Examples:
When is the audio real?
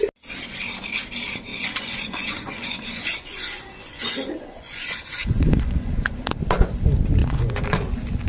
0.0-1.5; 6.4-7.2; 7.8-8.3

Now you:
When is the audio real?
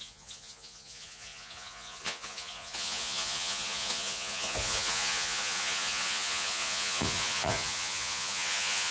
none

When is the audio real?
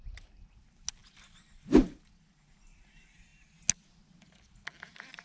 0.0-5.2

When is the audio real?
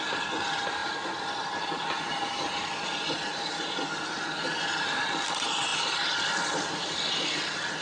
0.0-7.8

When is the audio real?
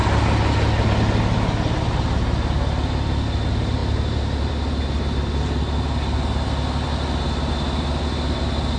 0.0-8.8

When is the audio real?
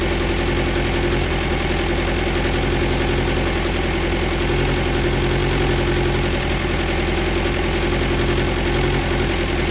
0.0-9.7